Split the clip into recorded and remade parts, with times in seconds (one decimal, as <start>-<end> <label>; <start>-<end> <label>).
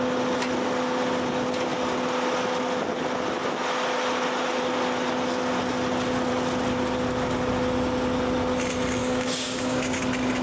0.0-9.0 recorded; 9.0-10.0 remade; 10.0-10.4 recorded